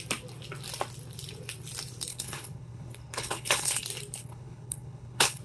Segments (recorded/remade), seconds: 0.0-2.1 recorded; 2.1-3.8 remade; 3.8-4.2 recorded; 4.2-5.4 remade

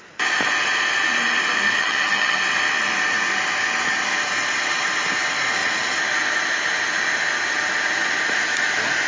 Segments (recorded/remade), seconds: 0.0-1.8 recorded; 1.8-2.4 remade; 2.4-9.1 recorded

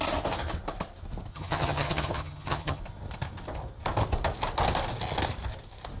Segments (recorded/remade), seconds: 0.0-1.3 recorded; 1.3-2.8 remade; 2.8-6.0 recorded